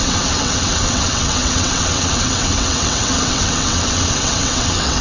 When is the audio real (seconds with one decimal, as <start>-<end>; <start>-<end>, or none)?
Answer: none